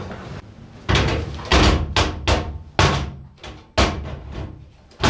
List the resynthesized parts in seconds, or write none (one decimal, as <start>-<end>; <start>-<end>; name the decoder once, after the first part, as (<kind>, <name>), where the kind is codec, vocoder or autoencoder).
none